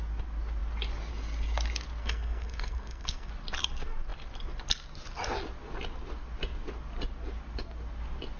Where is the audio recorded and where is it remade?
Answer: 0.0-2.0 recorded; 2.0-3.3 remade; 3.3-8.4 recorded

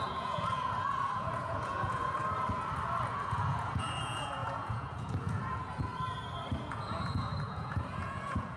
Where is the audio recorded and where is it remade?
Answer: 0.0-2.2 remade; 2.2-3.0 recorded; 3.0-5.9 remade; 5.9-6.6 recorded; 6.6-8.6 remade

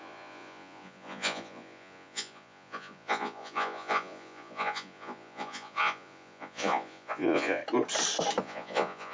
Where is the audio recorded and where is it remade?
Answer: 0.0-7.6 remade; 7.6-8.4 recorded; 8.4-9.1 remade

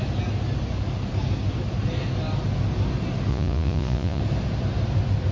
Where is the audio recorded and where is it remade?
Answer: 0.0-3.3 recorded; 3.3-4.2 remade; 4.2-5.3 recorded

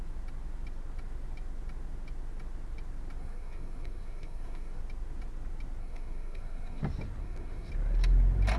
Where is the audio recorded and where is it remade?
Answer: 0.0-3.2 recorded; 3.2-4.8 remade; 4.8-5.8 recorded; 5.8-6.8 remade; 6.8-7.2 recorded; 7.2-7.7 remade; 7.7-8.6 recorded

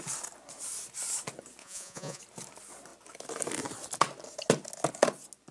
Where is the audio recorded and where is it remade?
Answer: 0.0-1.6 recorded; 1.6-2.2 remade; 2.2-5.5 recorded

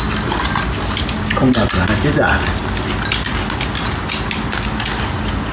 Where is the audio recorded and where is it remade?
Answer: 0.0-5.5 recorded

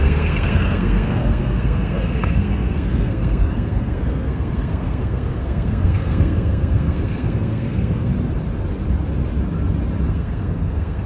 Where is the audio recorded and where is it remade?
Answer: 0.0-8.1 remade; 8.1-10.1 recorded; 10.1-11.1 remade